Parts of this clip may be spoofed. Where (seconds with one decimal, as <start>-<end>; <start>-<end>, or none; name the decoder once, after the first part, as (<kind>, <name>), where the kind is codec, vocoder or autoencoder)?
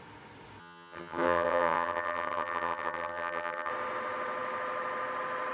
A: 0.6-3.7 (vocoder, HiFi-GAN)